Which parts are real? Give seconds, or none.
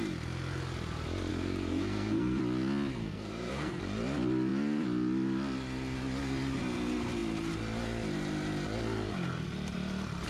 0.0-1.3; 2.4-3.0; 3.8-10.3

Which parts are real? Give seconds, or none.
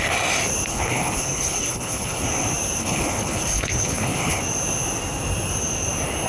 0.0-0.7; 2.2-2.8; 4.4-6.3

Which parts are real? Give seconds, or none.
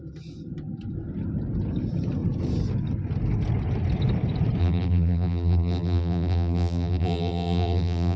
0.0-4.6